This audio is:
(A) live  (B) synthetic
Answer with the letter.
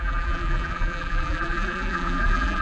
B